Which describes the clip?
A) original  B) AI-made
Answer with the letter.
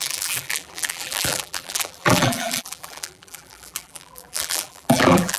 B